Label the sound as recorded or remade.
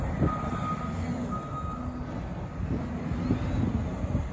recorded